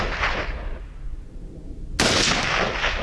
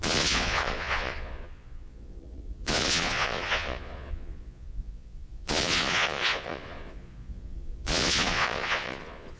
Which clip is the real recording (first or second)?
first